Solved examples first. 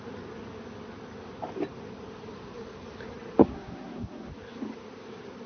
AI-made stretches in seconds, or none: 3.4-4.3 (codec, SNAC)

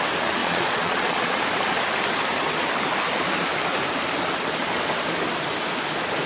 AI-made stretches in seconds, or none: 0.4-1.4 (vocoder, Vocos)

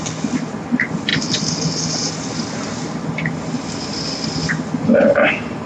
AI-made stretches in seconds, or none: none

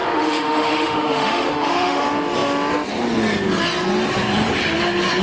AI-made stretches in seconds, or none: 0.0-2.0 (autoencoder, DAC-VAE)

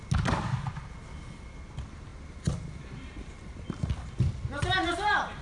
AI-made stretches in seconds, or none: none